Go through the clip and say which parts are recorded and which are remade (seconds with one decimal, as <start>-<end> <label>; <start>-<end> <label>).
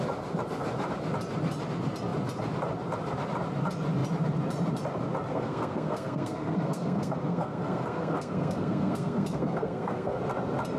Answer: 0.0-5.3 recorded; 5.3-10.2 remade; 10.2-10.8 recorded